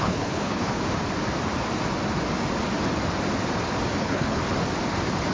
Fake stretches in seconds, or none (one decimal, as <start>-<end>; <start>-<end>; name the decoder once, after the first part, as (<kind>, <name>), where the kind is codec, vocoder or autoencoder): 0.0-0.8 (codec, HILCodec); 4.0-4.4